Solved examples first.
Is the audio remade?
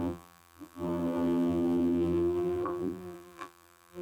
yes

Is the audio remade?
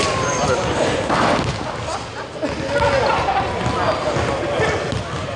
no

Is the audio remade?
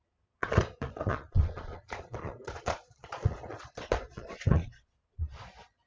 yes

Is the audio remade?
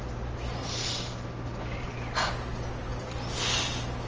no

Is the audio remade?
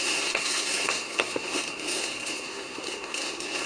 yes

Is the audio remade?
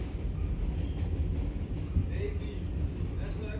no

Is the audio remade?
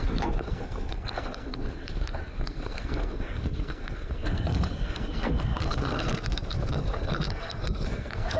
yes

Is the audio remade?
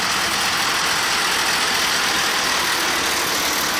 no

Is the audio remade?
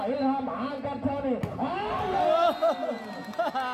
no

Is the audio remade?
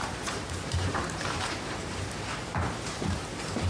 yes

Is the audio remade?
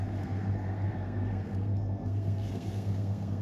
yes